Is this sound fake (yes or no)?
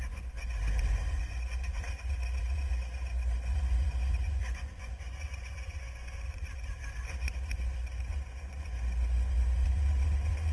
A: yes